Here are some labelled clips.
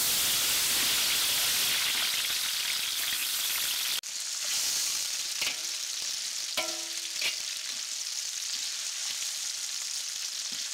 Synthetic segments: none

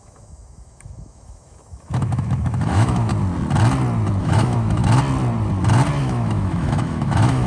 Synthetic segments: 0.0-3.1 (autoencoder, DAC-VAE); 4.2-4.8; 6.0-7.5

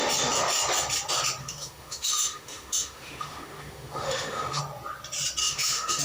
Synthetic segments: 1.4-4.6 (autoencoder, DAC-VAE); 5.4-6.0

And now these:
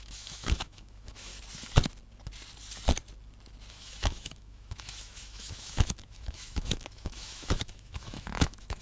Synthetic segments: 0.0-1.3 (autoencoder, DAC-VAE); 3.7-8.8

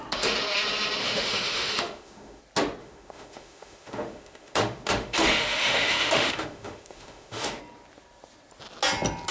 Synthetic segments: 1.0-2.4 (autoencoder, DAC-VAE); 2.8-7.6